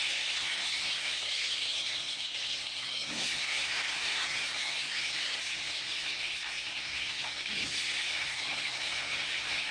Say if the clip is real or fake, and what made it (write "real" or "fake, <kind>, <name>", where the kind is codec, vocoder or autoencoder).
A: fake, codec, SNAC